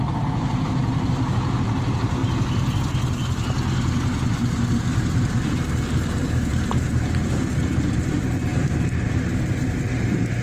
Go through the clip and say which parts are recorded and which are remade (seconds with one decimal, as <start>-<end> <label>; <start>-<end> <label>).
0.0-2.2 remade; 2.2-4.8 recorded; 4.8-10.4 remade